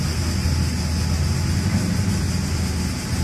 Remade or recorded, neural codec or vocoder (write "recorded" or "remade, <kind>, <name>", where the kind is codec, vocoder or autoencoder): recorded